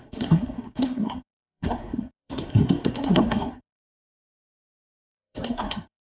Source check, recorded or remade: remade